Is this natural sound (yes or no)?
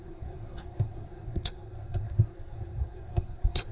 no